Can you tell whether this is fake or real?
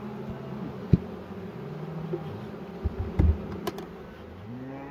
real